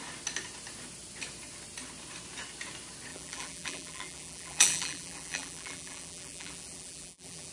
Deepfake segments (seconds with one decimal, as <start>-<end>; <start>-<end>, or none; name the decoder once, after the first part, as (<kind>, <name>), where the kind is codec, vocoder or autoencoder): 3.1-7.5 (vocoder, BigVGAN v2)